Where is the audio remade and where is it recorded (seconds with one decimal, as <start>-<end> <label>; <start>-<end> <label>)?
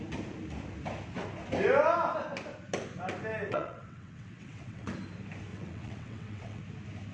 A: 0.0-3.5 recorded; 3.5-4.9 remade; 4.9-5.5 recorded; 5.5-6.6 remade; 6.6-7.1 recorded